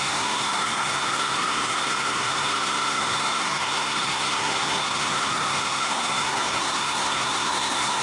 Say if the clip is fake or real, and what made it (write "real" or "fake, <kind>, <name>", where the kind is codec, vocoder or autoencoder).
fake, codec, SNAC